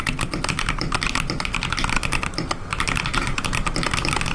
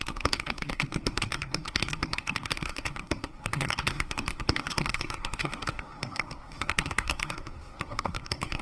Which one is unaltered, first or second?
first